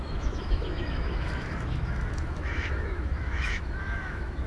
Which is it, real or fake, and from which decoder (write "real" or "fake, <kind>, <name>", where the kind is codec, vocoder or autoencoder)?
fake, autoencoder, DAC-VAE